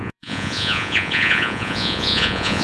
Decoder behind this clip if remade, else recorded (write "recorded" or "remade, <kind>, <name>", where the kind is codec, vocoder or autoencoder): remade, vocoder, Vocos